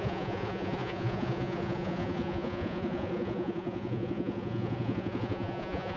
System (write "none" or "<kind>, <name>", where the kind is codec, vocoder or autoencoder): vocoder, Vocos